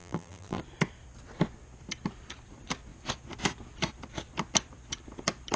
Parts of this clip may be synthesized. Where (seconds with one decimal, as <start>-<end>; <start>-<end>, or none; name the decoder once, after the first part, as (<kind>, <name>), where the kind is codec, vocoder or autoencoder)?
0.0-0.6 (vocoder, BigVGAN v2)